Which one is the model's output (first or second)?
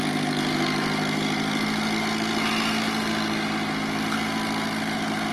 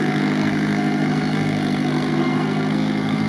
second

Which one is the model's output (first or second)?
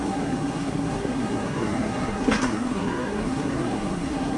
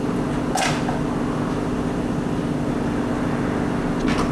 first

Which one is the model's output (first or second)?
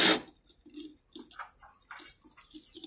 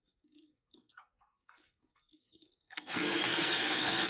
second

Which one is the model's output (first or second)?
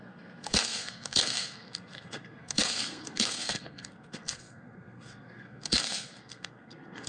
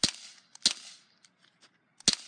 first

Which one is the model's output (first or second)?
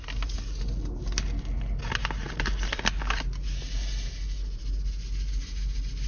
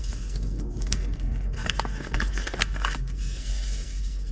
second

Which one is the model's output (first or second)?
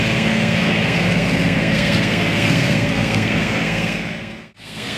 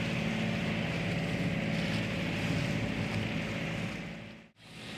first